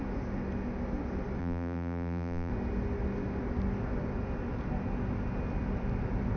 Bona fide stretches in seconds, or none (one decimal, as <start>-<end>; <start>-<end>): 0.0-1.4; 2.5-6.4